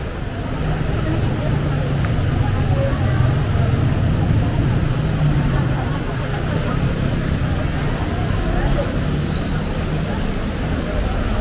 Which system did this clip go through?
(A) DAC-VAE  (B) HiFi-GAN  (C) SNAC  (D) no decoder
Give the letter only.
D